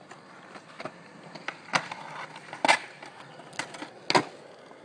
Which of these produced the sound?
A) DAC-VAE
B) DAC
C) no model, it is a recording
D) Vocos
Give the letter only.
C